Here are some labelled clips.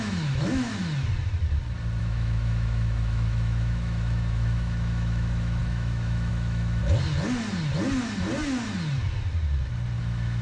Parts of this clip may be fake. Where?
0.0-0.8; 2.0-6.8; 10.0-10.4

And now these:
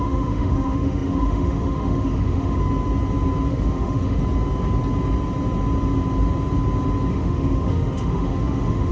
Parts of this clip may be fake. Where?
0.0-2.6; 3.5-4.2; 7.1-8.9

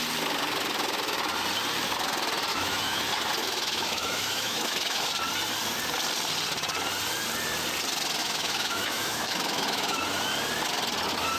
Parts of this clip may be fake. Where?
2.5-3.0; 3.4-5.1; 8.2-10.0

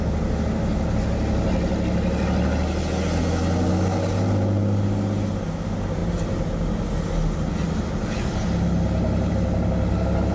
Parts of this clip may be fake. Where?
none

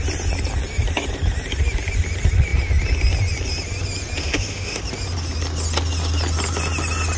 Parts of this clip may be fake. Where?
4.2-4.8

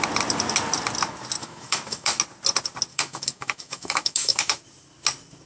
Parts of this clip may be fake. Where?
1.4-2.2; 2.9-4.6

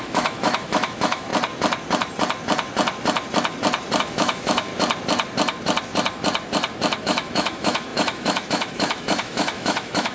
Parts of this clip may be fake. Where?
0.0-1.3; 4.0-4.7; 7.0-10.1

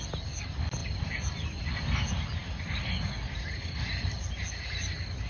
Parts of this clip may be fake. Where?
none